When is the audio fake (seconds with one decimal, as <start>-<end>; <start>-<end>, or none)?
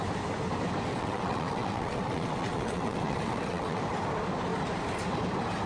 0.9-3.8